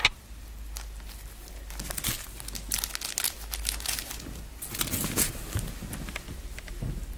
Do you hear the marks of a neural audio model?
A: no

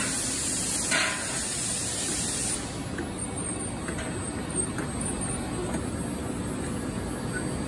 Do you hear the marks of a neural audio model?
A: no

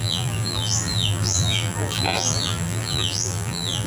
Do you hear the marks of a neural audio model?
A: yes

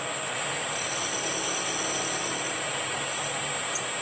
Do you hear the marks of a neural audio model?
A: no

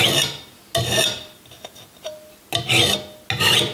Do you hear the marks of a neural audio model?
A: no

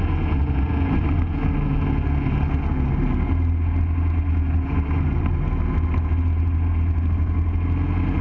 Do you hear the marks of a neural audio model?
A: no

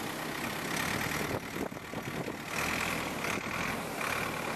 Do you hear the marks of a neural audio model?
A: no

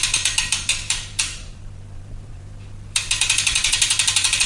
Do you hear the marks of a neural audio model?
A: yes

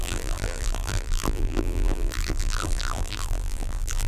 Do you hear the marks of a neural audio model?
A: yes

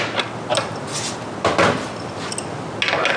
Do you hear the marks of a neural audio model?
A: no